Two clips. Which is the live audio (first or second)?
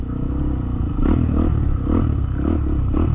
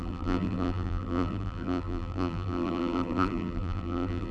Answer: first